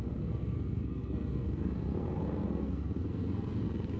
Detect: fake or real fake